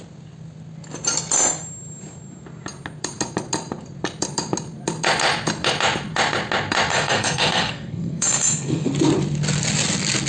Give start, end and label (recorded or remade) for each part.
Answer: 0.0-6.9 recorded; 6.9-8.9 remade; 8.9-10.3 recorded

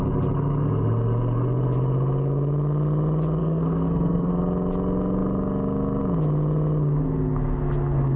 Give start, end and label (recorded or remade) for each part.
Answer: 0.0-3.4 recorded; 3.4-4.3 remade; 4.3-8.2 recorded

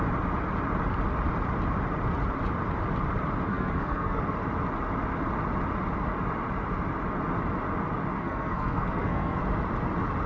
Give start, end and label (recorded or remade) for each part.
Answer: 0.0-3.5 recorded; 3.5-4.2 remade; 4.2-8.2 recorded; 8.2-9.4 remade; 9.4-10.3 recorded

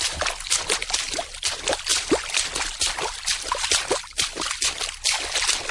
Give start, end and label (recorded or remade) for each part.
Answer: 0.0-5.7 recorded

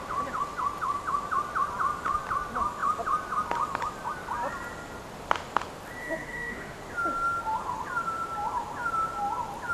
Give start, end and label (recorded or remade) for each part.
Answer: 0.0-6.0 recorded; 6.0-6.8 remade; 6.8-9.7 recorded

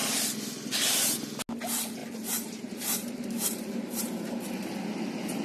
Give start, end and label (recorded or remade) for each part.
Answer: 0.0-2.0 recorded; 2.0-4.4 remade; 4.4-5.4 recorded

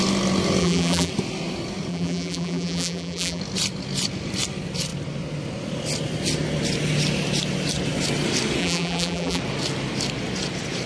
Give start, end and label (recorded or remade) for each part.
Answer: 0.0-0.6 recorded; 0.6-1.1 remade; 1.1-1.9 recorded; 1.9-3.4 remade; 3.4-8.6 recorded; 8.6-9.4 remade; 9.4-10.9 recorded

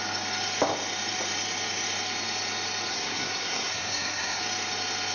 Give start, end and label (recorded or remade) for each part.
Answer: 0.0-2.9 recorded; 2.9-4.4 remade; 4.4-5.1 recorded